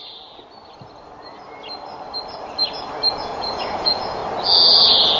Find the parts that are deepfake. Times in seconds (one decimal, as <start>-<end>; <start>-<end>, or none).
3.1-4.2